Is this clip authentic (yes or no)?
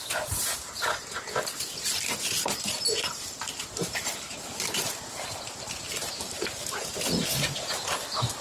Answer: no